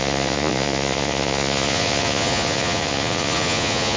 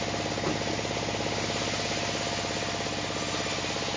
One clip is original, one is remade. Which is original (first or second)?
second